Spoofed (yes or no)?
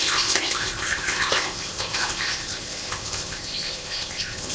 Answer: yes